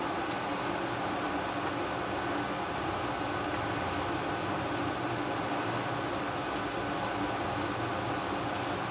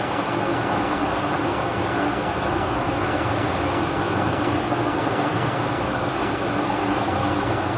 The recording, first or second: first